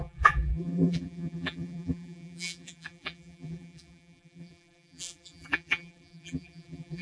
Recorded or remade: remade